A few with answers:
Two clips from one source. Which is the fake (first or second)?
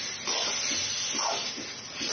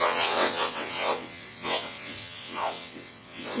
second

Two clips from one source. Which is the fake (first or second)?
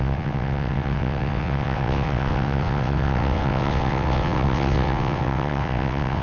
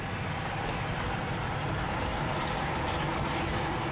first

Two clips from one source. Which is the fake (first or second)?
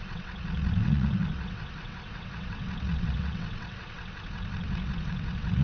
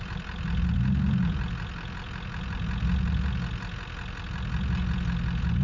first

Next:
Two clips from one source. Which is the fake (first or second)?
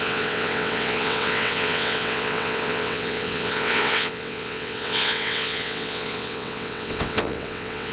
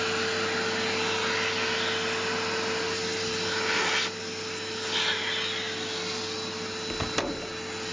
first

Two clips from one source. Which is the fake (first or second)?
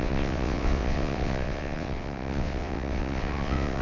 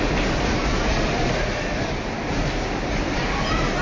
first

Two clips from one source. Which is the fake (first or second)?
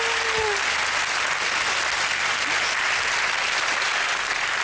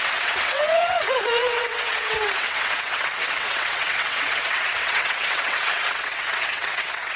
second